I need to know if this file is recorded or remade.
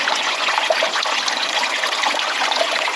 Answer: remade